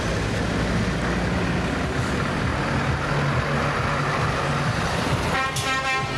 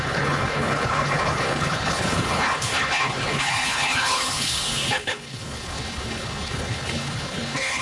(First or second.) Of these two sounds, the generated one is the second